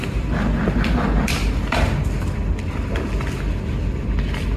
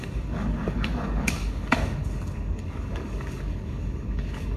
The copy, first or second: second